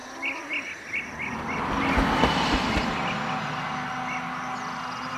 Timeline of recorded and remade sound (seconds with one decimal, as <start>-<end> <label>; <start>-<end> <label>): 0.0-5.2 recorded